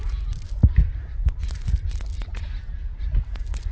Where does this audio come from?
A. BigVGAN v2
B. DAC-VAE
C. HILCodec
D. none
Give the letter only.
D